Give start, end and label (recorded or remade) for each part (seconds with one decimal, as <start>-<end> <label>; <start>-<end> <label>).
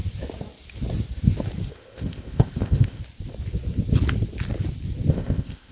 0.0-1.7 recorded; 1.7-3.0 remade; 3.0-5.1 recorded; 5.1-5.7 remade